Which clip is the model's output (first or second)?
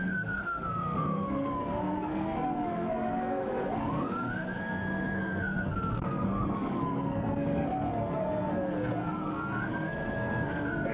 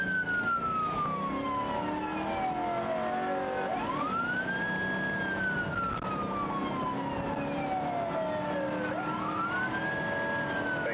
first